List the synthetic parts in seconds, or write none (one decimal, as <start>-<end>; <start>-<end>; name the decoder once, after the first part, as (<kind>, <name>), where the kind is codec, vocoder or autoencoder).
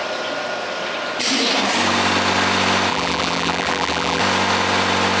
2.9-4.2 (vocoder, BigVGAN v2)